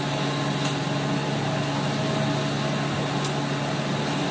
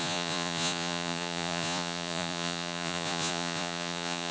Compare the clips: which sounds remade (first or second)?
second